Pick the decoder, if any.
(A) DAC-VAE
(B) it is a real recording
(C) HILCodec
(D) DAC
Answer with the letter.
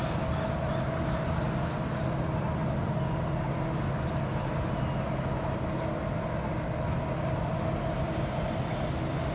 B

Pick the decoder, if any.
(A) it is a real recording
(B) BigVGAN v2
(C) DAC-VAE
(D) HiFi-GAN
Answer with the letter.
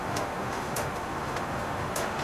C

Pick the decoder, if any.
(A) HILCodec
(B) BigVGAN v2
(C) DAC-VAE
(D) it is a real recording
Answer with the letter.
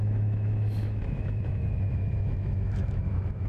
C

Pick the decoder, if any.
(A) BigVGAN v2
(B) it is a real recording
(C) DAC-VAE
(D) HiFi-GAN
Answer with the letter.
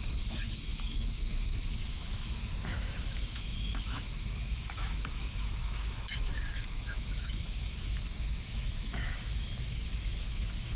C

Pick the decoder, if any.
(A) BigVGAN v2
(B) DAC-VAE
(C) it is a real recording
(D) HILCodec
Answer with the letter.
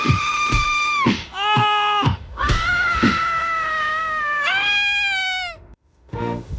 B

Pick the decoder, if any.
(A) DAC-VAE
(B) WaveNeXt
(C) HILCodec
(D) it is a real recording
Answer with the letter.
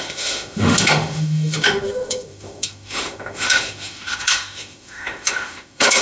A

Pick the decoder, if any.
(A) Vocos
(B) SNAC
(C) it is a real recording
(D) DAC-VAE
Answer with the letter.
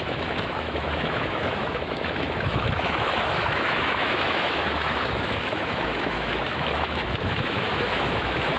D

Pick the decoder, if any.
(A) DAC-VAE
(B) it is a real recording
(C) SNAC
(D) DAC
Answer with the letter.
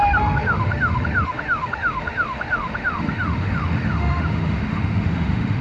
A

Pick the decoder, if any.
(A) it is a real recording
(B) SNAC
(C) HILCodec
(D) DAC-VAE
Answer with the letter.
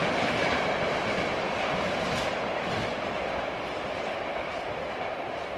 A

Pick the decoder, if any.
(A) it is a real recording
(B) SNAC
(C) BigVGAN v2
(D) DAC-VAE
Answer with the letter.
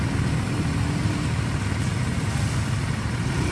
A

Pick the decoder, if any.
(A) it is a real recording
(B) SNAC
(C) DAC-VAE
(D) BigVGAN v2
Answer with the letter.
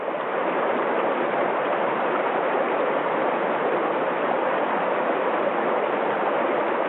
A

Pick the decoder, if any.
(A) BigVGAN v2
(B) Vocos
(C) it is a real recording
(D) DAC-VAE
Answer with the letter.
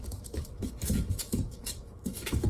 D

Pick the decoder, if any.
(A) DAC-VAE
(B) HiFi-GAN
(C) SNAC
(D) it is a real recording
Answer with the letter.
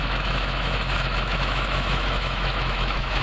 A